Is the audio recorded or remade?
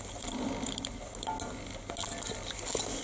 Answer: recorded